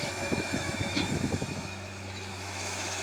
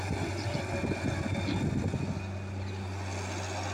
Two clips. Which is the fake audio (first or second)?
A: first